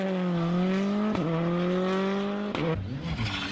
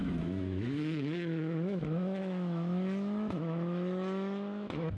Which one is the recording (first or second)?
first